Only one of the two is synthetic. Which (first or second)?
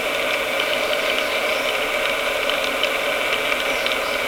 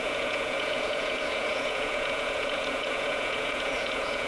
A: second